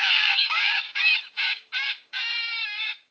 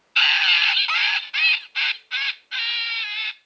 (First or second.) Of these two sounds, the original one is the second